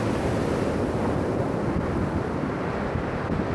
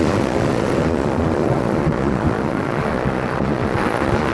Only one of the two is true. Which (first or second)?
first